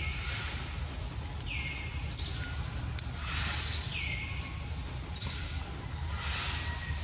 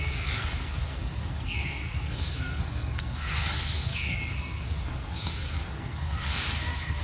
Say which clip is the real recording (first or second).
first